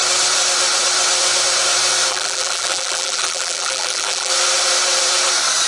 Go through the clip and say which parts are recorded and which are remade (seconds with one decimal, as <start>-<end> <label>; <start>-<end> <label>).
0.0-2.1 recorded; 2.1-4.3 remade; 4.3-5.7 recorded

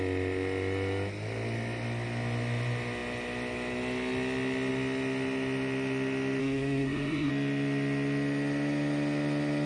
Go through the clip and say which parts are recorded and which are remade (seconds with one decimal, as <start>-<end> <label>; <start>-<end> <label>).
0.0-6.4 recorded; 6.4-7.3 remade; 7.3-9.7 recorded

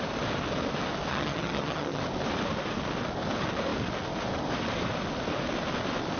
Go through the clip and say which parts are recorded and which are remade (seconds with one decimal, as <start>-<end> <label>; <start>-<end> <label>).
0.0-1.1 recorded; 1.1-2.0 remade; 2.0-6.2 recorded

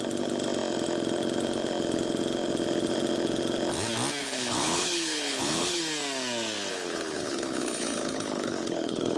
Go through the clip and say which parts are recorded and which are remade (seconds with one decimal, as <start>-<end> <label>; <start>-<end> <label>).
0.0-4.2 recorded; 4.2-5.8 remade; 5.8-6.7 recorded; 6.7-9.2 remade

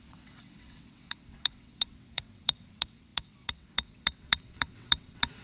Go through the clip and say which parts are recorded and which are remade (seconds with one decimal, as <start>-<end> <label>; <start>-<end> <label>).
0.0-5.4 remade

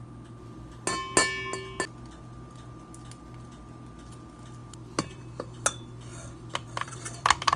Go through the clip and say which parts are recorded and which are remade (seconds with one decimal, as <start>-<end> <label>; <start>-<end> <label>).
0.0-4.6 recorded; 4.6-5.2 remade; 5.2-6.1 recorded; 6.1-7.6 remade

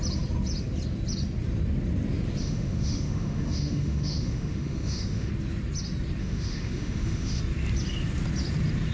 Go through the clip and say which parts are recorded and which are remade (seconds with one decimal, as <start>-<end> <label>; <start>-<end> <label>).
0.0-2.4 recorded; 2.4-5.3 remade; 5.3-6.2 recorded; 6.2-7.4 remade; 7.4-8.9 recorded

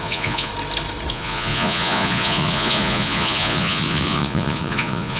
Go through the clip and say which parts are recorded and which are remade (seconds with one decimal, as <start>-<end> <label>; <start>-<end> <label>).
0.0-0.5 remade; 0.5-1.1 recorded; 1.1-5.2 remade